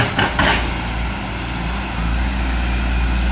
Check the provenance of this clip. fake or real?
real